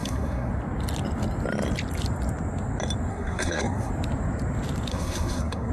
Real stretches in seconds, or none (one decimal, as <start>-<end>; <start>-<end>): 0.5-3.1; 3.9-4.9